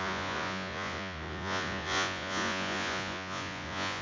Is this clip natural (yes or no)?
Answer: no